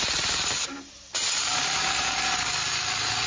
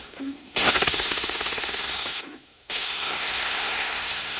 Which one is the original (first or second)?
first